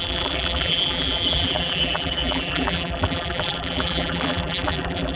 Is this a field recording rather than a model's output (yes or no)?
no